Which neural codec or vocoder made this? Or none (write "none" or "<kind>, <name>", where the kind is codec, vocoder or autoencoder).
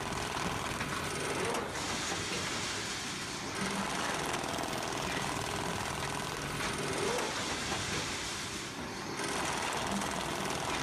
none